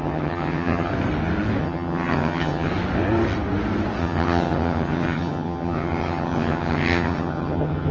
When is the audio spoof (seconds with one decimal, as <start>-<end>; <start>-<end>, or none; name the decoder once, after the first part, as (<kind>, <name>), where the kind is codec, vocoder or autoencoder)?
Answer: 0.0-0.9 (vocoder, HiFi-GAN); 1.6-2.7; 4.0-7.9

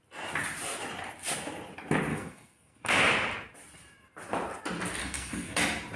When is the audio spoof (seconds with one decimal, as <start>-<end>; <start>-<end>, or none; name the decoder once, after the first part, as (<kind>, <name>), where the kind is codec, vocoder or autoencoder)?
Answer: 2.1-3.0 (codec, SNAC); 5.0-5.6

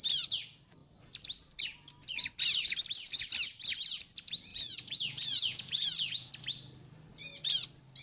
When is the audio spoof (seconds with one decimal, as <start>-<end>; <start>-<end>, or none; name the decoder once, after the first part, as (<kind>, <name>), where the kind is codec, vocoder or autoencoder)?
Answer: 4.5-6.3 (vocoder, Vocos)

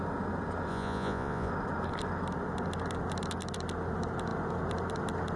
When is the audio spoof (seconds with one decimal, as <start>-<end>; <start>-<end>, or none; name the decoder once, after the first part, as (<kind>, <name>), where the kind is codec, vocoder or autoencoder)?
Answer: 0.7-1.5 (vocoder, Vocos)

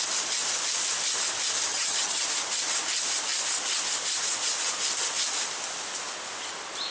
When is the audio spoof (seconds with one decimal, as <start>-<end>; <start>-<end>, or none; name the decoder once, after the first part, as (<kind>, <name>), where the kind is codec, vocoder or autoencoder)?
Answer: 1.7-2.2 (vocoder, HiFi-GAN)

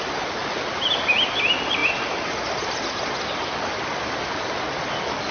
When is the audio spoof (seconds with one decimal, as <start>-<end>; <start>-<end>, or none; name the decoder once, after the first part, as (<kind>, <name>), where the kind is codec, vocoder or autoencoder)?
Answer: none

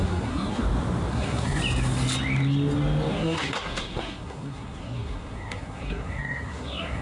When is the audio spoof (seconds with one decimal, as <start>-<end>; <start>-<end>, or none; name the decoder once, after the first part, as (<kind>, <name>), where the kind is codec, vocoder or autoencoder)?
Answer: 0.0-0.6 (codec, SNAC); 1.1-1.6; 3.1-7.0

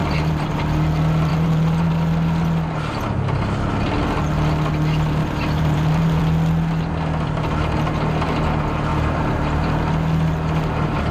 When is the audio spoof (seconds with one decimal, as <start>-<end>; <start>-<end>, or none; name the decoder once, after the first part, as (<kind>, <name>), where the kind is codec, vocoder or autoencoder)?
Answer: 0.0-0.6 (vocoder, BigVGAN v2); 1.3-1.9; 5.2-6.2; 8.9-9.9